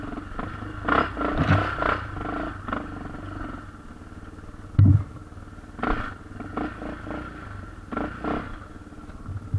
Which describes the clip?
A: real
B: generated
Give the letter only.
A